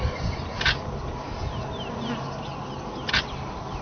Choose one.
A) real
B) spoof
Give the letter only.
A